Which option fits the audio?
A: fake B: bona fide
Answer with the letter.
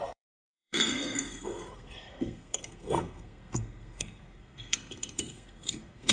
A